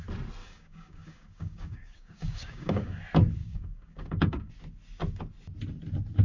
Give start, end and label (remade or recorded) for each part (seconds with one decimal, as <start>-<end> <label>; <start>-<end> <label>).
0.0-0.4 recorded; 0.4-3.0 remade; 3.0-3.4 recorded; 3.4-4.5 remade; 4.5-6.2 recorded